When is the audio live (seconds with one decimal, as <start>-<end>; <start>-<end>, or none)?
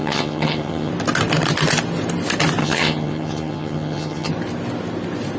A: 0.9-2.6; 4.3-5.4